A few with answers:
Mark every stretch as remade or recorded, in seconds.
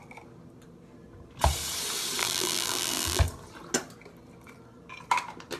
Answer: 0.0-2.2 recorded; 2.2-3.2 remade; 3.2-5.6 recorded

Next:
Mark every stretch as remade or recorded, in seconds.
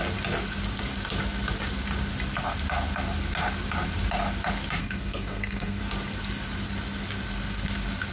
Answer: 0.0-4.8 recorded; 4.8-5.8 remade; 5.8-8.1 recorded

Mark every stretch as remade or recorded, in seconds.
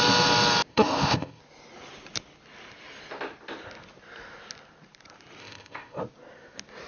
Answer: 0.0-0.7 recorded; 0.7-1.4 remade; 1.4-5.4 recorded; 5.4-6.0 remade; 6.0-6.9 recorded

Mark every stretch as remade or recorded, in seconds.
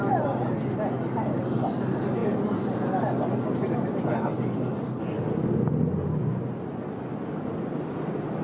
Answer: 0.0-8.4 recorded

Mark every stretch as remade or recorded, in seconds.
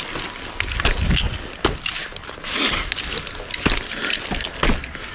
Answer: 0.0-5.1 recorded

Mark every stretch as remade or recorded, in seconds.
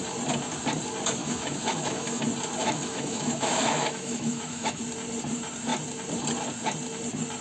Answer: 0.0-1.2 recorded; 1.2-2.2 remade; 2.2-2.6 recorded; 2.6-4.8 remade; 4.8-7.4 recorded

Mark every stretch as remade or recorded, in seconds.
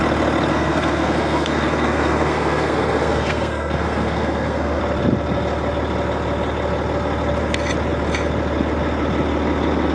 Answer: 0.0-0.5 recorded; 0.5-4.8 remade; 4.8-9.9 recorded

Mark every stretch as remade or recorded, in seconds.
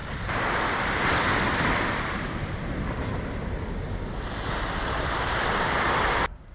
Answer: 0.0-6.5 remade